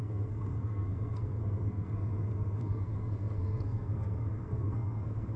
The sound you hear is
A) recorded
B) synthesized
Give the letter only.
B